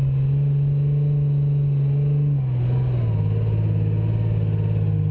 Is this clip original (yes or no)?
yes